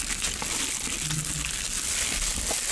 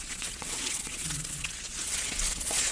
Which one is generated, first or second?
second